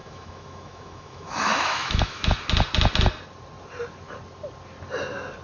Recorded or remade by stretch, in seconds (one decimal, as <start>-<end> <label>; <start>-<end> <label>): 0.0-2.3 remade; 2.3-5.4 recorded